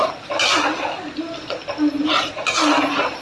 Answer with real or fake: real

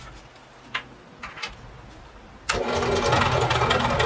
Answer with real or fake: real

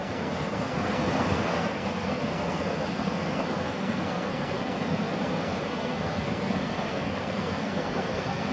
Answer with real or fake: fake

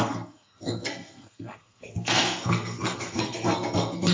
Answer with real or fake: fake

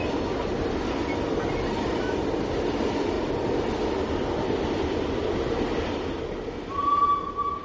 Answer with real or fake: real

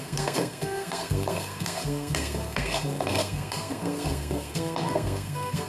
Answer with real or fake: fake